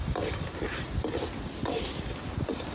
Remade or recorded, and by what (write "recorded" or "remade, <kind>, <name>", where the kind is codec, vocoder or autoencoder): recorded